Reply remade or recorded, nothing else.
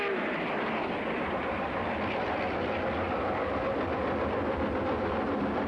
recorded